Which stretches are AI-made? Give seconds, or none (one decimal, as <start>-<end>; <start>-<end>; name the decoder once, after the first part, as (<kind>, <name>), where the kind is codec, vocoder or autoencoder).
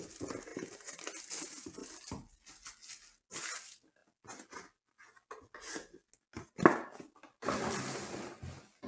0.5-1.2 (vocoder, BigVGAN v2)